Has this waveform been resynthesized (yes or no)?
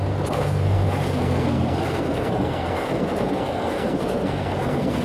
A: yes